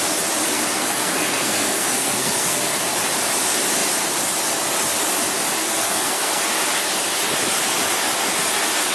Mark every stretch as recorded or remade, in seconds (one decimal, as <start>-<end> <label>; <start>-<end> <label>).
0.0-0.5 recorded; 0.5-2.8 remade; 2.8-5.6 recorded; 5.6-6.4 remade; 6.4-8.9 recorded